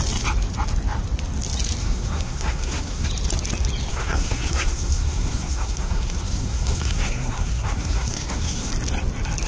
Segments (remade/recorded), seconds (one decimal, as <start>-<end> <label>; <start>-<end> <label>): 0.0-1.8 recorded; 1.8-3.1 remade; 3.1-3.9 recorded; 3.9-8.7 remade; 8.7-9.5 recorded